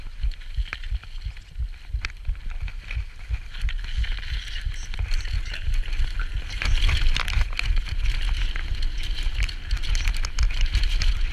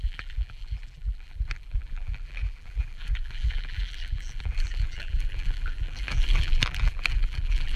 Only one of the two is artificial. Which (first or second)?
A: second